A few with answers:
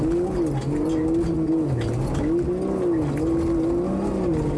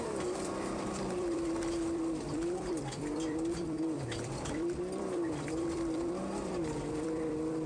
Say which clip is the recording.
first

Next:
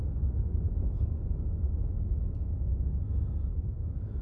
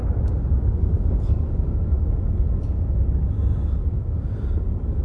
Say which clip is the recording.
second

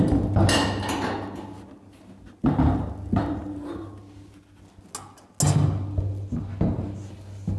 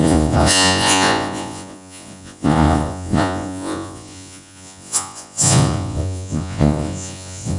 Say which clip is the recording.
first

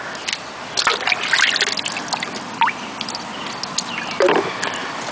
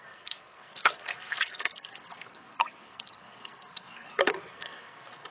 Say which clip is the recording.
first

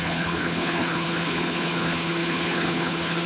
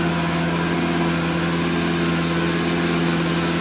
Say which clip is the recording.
second